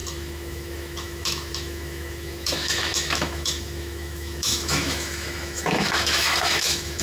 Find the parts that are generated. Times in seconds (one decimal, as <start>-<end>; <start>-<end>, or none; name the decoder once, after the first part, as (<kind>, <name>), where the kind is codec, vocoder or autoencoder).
0.0-7.0 (autoencoder, DAC-VAE)